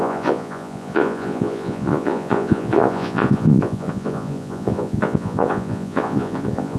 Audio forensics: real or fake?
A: fake